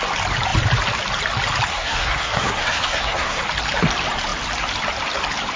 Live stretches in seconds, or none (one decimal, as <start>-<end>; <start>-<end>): 0.0-1.7; 3.4-5.6

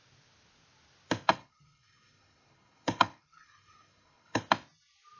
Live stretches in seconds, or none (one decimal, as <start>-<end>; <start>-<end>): 0.0-1.3; 4.4-5.2

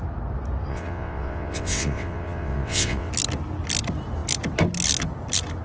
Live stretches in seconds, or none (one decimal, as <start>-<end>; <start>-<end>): 0.0-0.7; 3.1-5.6

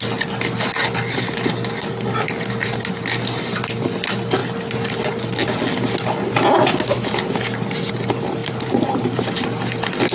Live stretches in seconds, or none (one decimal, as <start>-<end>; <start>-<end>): 0.0-8.4; 9.3-10.1

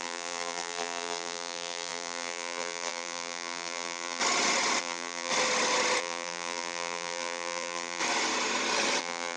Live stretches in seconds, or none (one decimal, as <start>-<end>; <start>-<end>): 4.2-4.8; 5.3-6.0; 8.0-9.0

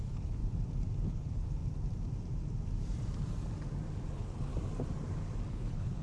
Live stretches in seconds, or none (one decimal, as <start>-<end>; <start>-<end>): 0.4-1.1; 1.6-4.1; 4.5-5.5

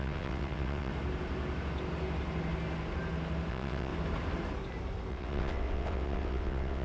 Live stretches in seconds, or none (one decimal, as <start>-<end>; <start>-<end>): 0.9-3.5; 3.9-5.1

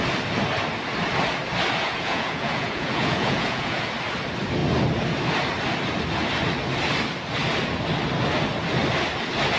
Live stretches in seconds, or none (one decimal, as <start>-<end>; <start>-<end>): 0.0-1.9; 3.9-9.6